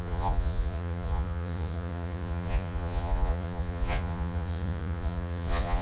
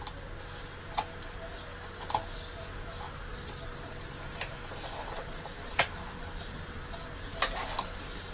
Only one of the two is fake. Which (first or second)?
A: first